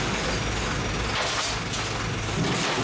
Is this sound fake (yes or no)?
no